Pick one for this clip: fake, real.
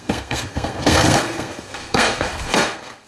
fake